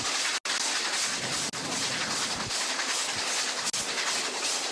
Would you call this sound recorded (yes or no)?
yes